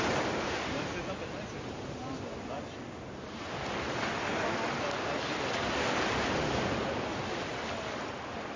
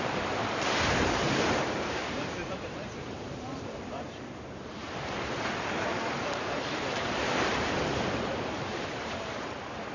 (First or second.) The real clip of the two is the first